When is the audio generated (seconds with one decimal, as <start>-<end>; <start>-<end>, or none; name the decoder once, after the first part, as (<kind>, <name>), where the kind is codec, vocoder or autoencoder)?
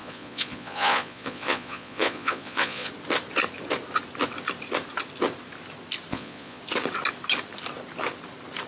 0.0-2.9 (vocoder, Vocos); 6.1-6.6